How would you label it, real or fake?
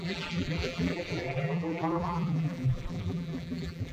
fake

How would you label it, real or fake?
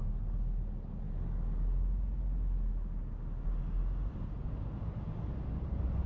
real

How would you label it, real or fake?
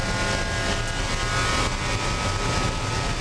real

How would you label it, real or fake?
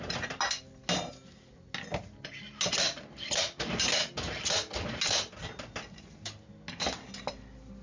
real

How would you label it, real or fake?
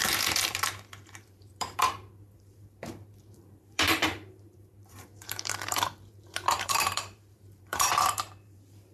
fake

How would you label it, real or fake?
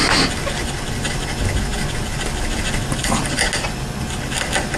real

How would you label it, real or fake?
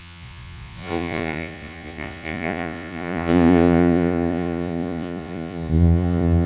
fake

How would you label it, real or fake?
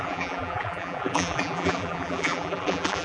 fake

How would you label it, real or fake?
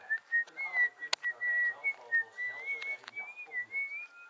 real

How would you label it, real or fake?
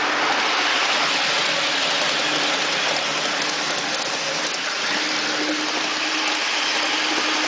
real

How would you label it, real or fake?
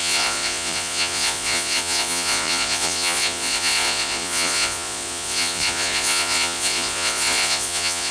fake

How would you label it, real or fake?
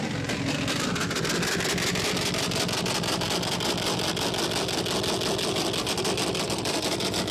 real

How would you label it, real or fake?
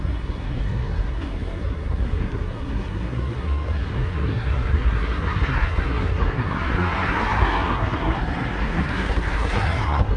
fake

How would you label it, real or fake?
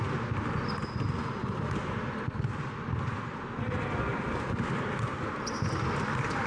real